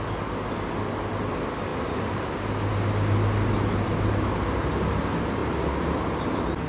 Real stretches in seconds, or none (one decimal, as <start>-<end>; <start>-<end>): 0.0-6.7